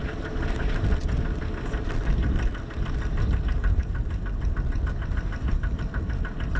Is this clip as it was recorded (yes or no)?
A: yes